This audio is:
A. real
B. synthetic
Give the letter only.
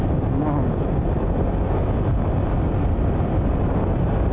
A